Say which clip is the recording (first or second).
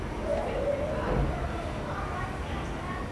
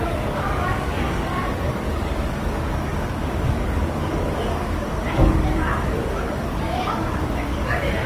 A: first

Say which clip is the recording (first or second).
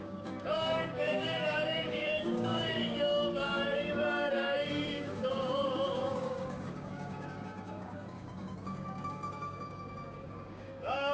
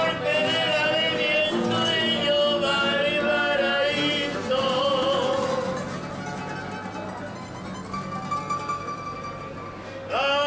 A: second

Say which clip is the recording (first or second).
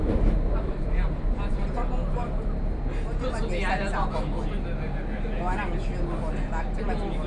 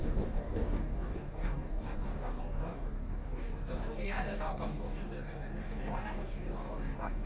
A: first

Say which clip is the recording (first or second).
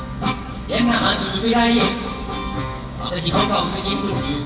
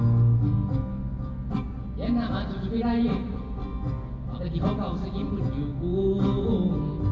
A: second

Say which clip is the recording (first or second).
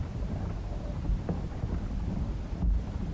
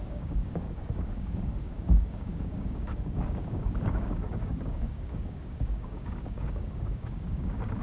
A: first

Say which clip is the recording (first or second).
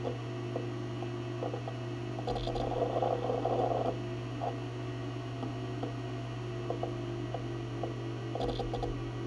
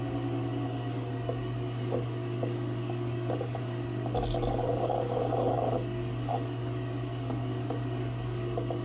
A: first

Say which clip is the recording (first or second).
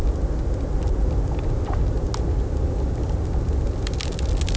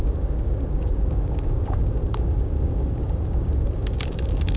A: first